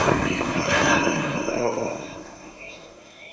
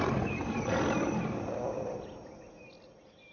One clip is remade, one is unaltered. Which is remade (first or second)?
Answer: first